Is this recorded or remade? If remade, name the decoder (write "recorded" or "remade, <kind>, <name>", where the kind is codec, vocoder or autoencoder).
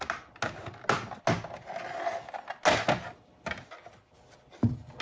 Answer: recorded